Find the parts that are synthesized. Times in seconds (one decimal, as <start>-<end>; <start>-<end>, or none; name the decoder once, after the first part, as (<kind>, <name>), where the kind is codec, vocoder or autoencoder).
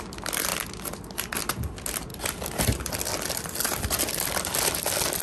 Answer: 2.1-5.2 (vocoder, BigVGAN v2)